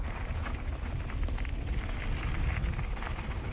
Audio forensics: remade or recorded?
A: recorded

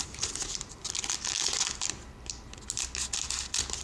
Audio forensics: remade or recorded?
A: recorded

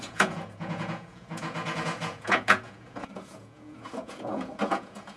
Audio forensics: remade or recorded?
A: remade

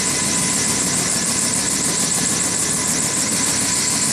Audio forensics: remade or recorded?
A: recorded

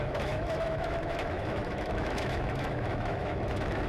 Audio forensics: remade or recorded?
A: remade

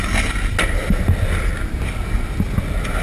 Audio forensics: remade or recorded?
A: recorded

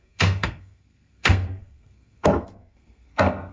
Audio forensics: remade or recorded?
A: remade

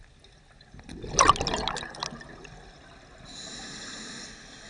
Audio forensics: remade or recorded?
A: recorded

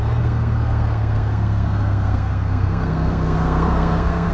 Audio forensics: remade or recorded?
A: remade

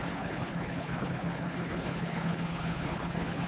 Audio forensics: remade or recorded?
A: remade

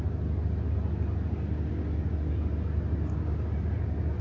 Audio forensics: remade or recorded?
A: recorded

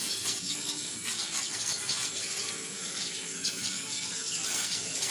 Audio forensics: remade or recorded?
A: remade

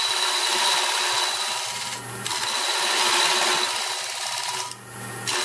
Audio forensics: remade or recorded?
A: recorded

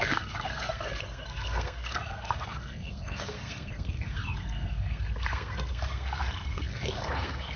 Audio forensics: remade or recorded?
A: remade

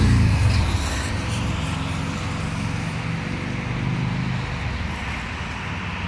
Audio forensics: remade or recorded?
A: recorded